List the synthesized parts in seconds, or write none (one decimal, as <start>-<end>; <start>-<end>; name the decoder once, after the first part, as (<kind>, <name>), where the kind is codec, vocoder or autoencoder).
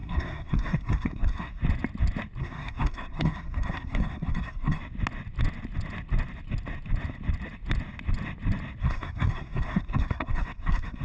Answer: 0.0-1.6 (codec, SNAC); 2.4-4.8; 8.8-11.0